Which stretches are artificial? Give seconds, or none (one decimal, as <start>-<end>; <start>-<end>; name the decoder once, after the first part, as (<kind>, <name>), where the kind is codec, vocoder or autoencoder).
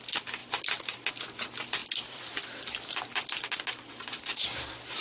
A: none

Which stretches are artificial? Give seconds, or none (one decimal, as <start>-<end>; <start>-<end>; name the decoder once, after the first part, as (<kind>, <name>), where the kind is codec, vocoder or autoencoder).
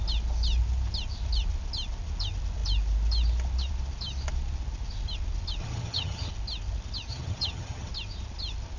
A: 5.6-6.3 (vocoder, HiFi-GAN); 7.1-7.9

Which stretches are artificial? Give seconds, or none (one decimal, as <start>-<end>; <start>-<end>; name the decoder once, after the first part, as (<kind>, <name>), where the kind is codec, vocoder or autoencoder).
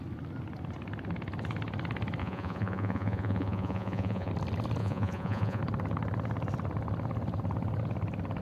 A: 2.2-4.3 (vocoder, Vocos); 4.8-5.6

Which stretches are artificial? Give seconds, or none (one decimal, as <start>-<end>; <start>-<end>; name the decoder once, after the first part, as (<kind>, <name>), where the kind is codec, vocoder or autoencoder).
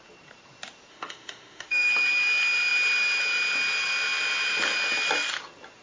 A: 0.9-1.9 (autoencoder, DAC-VAE)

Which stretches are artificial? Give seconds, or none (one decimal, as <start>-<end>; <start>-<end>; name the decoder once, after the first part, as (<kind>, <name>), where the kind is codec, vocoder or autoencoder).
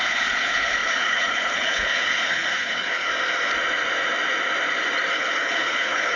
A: 0.0-3.1 (codec, HILCodec); 5.1-6.2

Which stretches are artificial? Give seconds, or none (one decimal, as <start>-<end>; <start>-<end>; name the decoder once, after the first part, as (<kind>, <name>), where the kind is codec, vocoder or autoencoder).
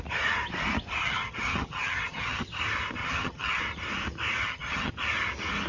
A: 1.0-2.6 (vocoder, HiFi-GAN); 3.0-3.6; 4.4-4.9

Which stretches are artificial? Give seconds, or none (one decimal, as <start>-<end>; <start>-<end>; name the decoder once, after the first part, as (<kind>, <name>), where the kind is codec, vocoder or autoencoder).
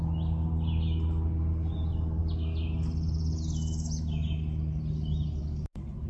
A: none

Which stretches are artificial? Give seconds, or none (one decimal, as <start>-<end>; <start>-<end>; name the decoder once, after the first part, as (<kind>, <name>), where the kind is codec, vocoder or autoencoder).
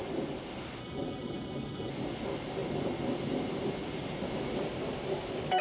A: 0.8-1.9 (codec, HILCodec)